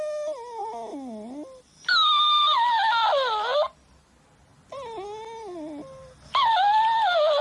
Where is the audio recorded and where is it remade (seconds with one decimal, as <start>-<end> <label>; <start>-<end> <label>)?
0.0-7.4 recorded